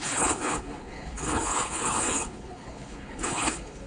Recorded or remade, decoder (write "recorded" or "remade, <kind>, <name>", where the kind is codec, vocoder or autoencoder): remade, codec, HILCodec